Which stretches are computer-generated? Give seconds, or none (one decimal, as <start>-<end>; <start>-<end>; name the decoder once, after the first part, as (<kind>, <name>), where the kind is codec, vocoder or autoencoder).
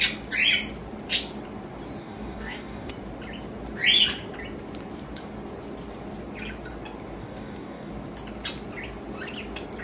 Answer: 2.0-2.9 (codec, DAC); 7.2-7.9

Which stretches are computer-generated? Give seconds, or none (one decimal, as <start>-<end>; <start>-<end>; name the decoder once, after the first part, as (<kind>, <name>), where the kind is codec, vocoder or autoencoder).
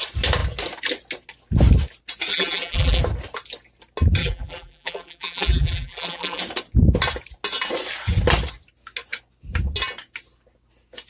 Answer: 2.3-3.0 (vocoder, BigVGAN v2); 4.2-6.4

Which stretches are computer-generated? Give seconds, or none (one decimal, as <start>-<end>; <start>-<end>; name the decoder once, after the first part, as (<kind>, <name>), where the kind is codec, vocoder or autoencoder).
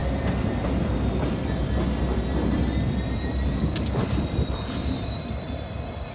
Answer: 3.5-4.0 (codec, DAC)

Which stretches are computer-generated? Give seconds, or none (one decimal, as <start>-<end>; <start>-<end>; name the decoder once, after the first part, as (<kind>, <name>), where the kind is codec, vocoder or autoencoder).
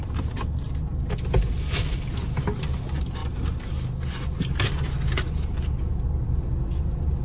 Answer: none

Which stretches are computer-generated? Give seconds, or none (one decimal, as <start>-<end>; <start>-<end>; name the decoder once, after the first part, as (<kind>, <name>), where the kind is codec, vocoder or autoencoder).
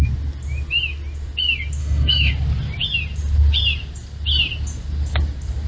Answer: 1.8-2.3 (autoencoder, DAC-VAE)